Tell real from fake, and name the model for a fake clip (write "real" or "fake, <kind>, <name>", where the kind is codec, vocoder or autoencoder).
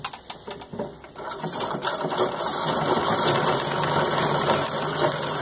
real